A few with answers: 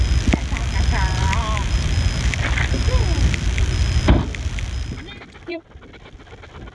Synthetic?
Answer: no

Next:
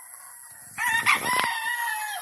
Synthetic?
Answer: no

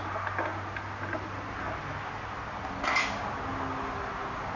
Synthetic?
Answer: no